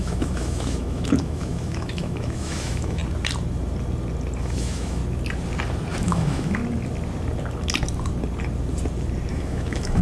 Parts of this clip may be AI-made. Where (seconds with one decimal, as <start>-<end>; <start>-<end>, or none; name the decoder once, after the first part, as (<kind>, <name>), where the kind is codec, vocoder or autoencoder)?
0.0-3.0 (autoencoder, DAC-VAE); 4.4-5.0; 6.0-6.6; 9.3-10.0